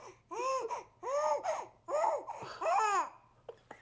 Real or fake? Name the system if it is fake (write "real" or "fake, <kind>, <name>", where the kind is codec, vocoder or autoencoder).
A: real